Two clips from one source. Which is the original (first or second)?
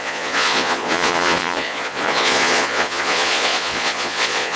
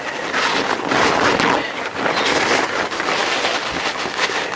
second